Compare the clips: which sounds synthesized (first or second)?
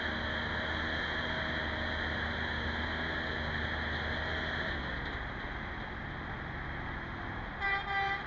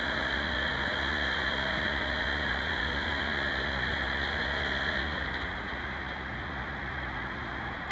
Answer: second